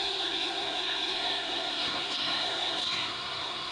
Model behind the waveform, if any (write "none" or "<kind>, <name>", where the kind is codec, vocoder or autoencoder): codec, SNAC